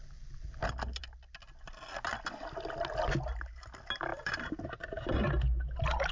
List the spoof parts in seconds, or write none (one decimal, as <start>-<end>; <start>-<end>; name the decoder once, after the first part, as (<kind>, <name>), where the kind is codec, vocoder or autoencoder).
4.1-5.2 (vocoder, BigVGAN v2)